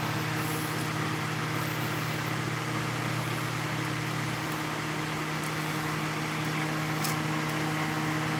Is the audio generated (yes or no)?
no